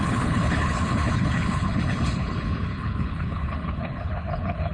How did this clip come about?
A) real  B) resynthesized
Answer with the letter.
B